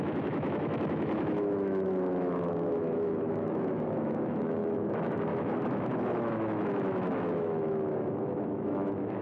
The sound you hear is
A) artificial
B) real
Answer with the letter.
A